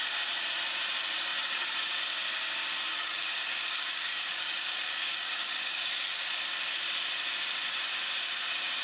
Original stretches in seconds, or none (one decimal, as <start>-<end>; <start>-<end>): 0.0-2.9; 6.3-8.8